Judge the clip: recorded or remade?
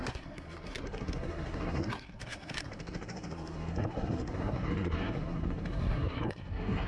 remade